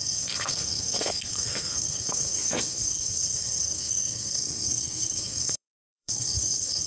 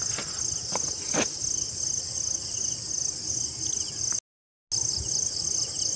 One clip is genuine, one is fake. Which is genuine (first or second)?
second